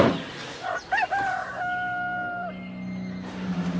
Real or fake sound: real